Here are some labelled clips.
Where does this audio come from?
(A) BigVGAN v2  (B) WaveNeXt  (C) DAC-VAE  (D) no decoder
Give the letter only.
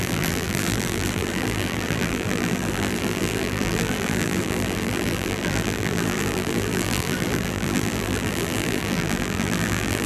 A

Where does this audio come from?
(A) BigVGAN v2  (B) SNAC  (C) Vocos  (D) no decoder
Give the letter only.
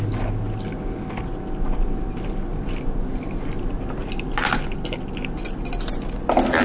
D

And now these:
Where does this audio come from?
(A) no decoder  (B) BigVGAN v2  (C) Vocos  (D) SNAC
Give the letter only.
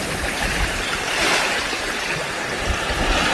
B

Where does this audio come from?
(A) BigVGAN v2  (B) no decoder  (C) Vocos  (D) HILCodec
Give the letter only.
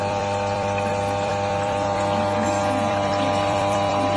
A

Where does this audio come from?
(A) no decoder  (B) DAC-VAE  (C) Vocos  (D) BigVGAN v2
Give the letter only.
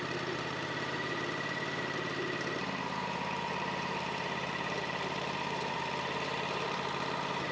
D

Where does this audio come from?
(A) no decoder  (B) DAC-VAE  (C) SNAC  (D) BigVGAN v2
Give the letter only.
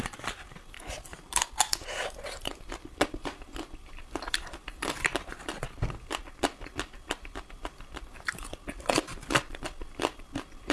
D